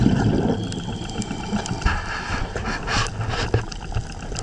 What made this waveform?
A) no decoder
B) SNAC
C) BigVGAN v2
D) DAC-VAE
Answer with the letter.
A